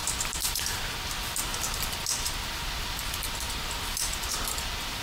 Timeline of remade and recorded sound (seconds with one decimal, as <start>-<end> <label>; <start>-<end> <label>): 0.0-0.9 remade; 0.9-1.5 recorded; 1.5-4.5 remade; 4.5-5.0 recorded